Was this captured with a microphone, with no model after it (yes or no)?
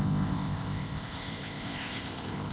no